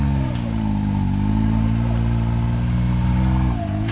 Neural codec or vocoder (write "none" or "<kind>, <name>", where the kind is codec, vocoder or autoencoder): none